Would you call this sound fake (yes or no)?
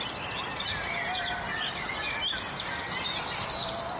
no